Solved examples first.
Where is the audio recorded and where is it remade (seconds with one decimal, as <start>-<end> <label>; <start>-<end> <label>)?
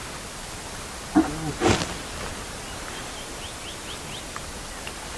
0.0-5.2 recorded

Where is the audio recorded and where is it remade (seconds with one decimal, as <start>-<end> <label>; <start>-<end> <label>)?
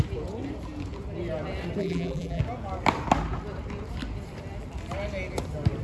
0.0-1.8 recorded; 1.8-2.4 remade; 2.4-5.8 recorded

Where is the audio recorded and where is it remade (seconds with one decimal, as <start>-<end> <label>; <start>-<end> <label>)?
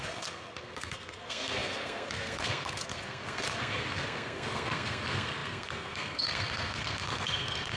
0.0-7.8 remade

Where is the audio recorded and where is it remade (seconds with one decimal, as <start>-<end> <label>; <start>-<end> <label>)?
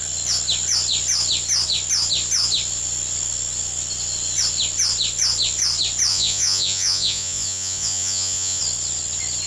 0.0-6.1 recorded; 6.1-8.6 remade; 8.6-9.5 recorded